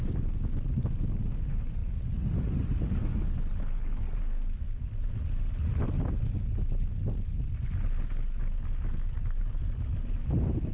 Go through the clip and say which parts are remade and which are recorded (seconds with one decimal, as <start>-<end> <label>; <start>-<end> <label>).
0.0-10.7 recorded